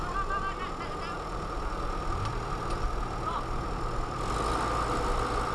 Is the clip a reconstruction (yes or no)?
no